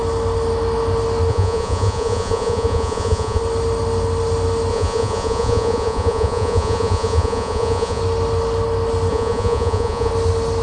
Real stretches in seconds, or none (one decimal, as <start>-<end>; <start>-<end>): 0.0-1.3; 3.4-4.7; 8.0-9.1; 10.1-10.6